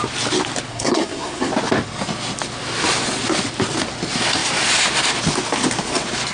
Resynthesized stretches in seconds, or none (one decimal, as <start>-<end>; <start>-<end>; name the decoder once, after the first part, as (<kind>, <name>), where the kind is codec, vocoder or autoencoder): 0.7-1.5 (codec, SNAC)